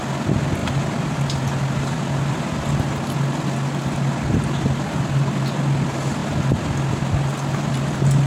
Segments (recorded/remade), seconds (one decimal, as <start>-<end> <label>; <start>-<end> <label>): 0.0-8.3 recorded